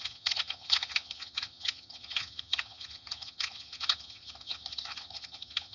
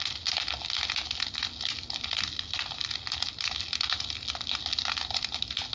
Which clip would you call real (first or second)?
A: second